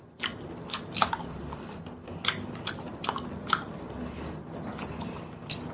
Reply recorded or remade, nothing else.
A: recorded